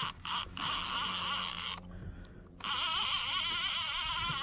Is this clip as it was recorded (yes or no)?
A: no